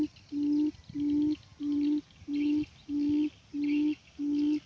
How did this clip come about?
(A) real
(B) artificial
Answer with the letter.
A